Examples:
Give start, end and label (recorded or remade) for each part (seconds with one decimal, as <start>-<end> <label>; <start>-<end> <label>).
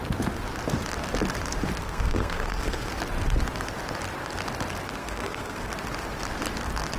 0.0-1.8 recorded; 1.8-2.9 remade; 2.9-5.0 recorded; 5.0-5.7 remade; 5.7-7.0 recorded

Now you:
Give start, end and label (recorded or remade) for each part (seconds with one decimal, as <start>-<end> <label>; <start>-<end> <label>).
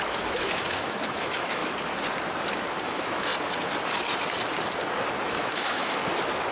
0.0-1.6 remade; 1.6-2.8 recorded; 2.8-3.3 remade; 3.3-5.3 recorded; 5.3-6.0 remade; 6.0-6.5 recorded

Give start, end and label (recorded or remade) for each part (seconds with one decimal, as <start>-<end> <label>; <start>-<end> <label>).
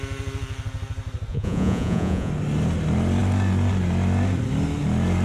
0.0-1.3 recorded; 1.3-2.3 remade; 2.3-5.2 recorded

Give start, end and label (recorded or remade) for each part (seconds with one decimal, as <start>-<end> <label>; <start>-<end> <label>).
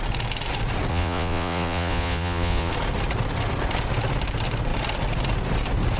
0.0-0.9 recorded; 0.9-2.7 remade; 2.7-6.0 recorded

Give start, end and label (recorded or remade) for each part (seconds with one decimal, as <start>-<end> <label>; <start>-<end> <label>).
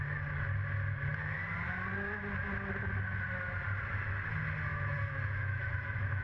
0.0-4.7 recorded; 4.7-6.2 remade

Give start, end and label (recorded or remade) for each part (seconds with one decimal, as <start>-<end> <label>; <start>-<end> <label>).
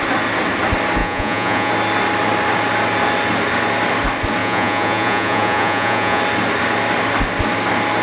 0.0-1.0 recorded; 1.0-1.7 remade; 1.7-4.4 recorded; 4.4-6.2 remade; 6.2-8.0 recorded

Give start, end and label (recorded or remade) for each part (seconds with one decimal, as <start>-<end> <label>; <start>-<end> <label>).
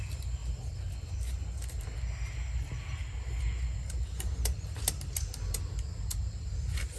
0.0-7.0 recorded